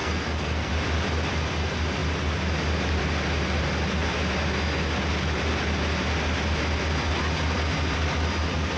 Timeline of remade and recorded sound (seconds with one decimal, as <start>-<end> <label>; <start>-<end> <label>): 0.0-0.7 remade; 0.7-8.8 recorded